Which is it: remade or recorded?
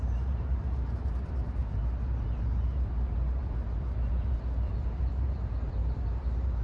remade